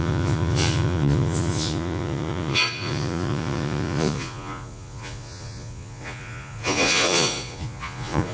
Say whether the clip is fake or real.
fake